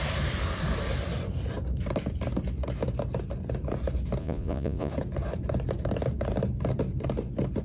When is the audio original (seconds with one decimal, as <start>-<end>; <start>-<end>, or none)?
0.0-4.2; 4.9-7.6